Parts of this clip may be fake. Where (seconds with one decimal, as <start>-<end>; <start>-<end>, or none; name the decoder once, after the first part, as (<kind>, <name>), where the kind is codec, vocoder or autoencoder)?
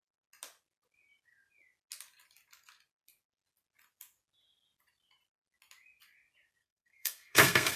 6.6-7.8 (codec, SNAC)